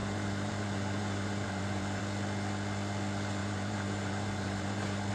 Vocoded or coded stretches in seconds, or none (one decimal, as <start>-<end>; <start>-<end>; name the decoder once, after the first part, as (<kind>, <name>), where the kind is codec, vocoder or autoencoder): 0.0-2.0 (vocoder, BigVGAN v2); 3.4-5.1